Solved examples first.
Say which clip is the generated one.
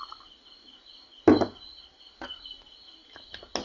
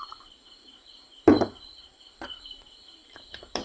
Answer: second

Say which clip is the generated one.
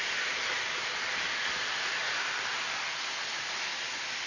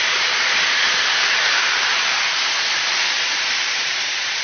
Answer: second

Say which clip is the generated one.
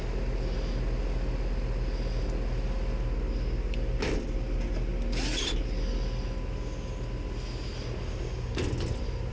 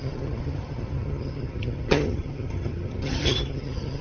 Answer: second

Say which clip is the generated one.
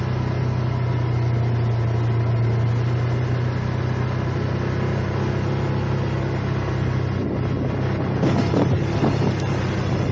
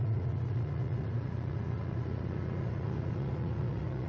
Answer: second